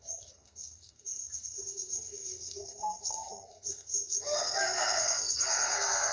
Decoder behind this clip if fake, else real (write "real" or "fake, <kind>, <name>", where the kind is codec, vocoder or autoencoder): fake, codec, SNAC